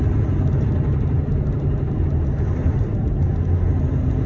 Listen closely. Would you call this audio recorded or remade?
recorded